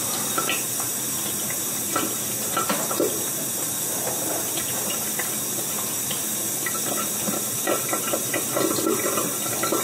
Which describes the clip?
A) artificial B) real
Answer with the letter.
B